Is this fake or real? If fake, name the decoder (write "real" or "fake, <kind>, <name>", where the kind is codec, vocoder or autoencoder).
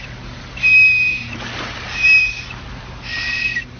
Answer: fake, vocoder, BigVGAN v2